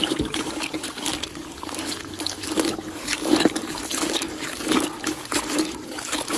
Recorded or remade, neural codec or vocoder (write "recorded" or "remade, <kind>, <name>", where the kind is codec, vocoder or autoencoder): remade, codec, DAC